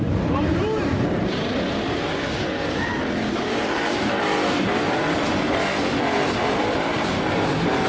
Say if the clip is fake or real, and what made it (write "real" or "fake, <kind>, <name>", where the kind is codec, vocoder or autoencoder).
fake, vocoder, BigVGAN v2